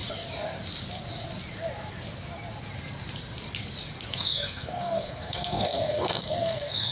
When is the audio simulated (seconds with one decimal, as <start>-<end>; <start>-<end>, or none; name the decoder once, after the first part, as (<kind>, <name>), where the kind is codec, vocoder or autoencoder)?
4.1-6.9 (codec, SNAC)